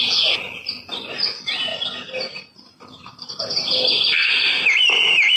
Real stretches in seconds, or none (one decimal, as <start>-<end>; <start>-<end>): 0.0-1.7; 3.6-4.2; 4.9-5.4